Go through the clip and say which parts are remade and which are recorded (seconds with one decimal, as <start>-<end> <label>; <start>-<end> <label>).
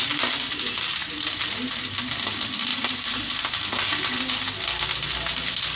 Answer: 0.0-2.7 recorded; 2.7-3.2 remade; 3.2-5.8 recorded